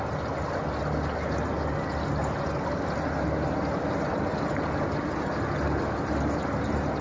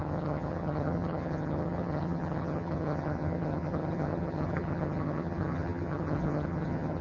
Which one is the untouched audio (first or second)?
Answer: first